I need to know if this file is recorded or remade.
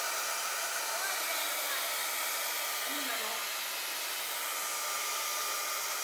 recorded